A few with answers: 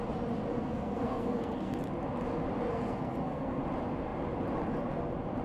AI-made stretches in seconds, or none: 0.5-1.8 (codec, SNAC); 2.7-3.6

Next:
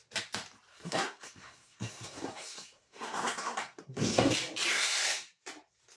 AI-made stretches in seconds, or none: 0.7-4.3 (codec, SNAC); 4.7-5.3

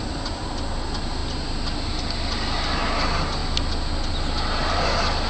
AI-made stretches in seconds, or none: none

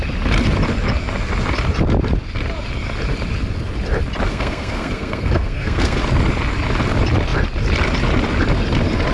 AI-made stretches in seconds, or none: 4.3-6.0 (codec, SNAC)